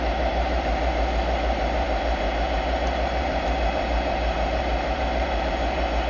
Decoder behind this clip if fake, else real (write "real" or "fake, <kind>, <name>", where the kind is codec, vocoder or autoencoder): fake, vocoder, BigVGAN v2